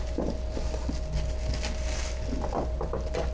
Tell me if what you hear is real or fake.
real